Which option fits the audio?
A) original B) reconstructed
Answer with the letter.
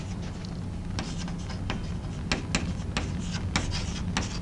A